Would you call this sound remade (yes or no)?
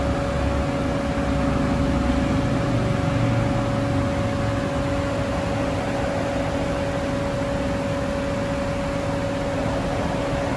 no